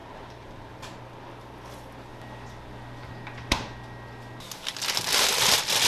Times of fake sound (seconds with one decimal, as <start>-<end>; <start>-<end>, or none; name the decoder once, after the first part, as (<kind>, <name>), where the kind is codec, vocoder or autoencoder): 0.0-1.0 (vocoder, BigVGAN v2)